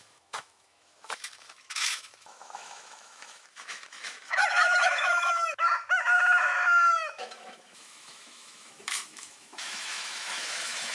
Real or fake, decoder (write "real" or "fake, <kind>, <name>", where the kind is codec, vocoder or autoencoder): fake, autoencoder, DAC-VAE